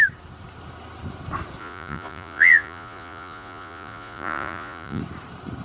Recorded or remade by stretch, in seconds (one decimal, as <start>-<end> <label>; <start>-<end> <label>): 0.0-1.6 recorded; 1.6-5.0 remade; 5.0-5.6 recorded

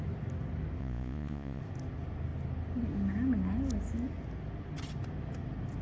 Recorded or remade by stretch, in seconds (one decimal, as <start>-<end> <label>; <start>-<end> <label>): 0.0-0.8 recorded; 0.8-1.6 remade; 1.6-5.8 recorded

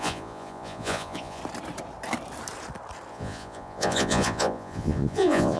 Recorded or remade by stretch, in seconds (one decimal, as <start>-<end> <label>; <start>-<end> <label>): 0.0-1.4 remade; 1.4-3.1 recorded; 3.1-5.6 remade

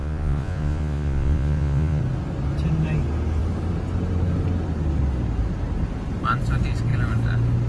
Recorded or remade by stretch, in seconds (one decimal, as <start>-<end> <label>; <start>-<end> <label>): 0.0-2.0 remade; 2.0-7.7 recorded

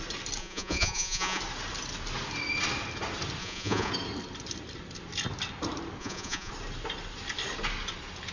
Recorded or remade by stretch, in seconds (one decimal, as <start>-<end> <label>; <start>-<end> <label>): 0.0-0.4 recorded; 0.4-1.4 remade; 1.4-3.4 recorded; 3.4-3.9 remade; 3.9-6.0 recorded; 6.0-6.5 remade; 6.5-8.3 recorded

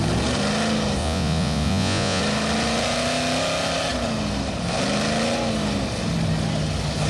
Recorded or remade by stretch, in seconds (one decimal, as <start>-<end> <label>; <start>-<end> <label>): 0.0-1.0 recorded; 1.0-2.2 remade; 2.2-7.1 recorded

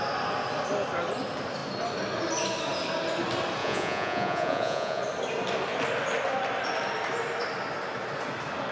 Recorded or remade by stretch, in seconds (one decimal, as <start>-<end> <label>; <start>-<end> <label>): 0.0-3.6 recorded; 3.6-5.0 remade; 5.0-8.7 recorded